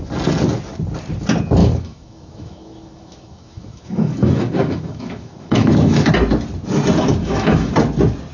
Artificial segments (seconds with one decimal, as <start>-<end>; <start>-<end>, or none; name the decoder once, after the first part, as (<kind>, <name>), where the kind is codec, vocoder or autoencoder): 1.6-6.1 (autoencoder, DAC-VAE); 7.2-7.7